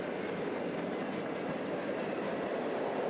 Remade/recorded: recorded